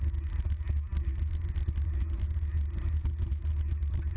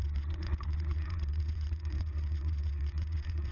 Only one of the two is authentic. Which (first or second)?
first